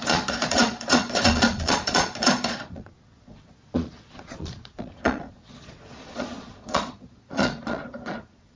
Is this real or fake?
fake